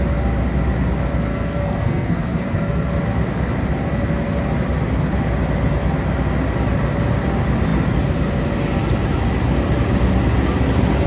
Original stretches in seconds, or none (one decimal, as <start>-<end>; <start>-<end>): 0.0-1.3; 2.9-11.1